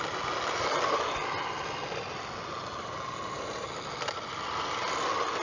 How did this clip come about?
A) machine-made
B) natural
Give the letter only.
B